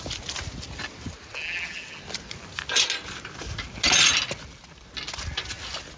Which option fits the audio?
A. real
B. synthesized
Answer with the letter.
A